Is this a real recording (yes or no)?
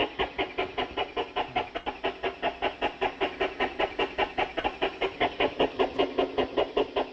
yes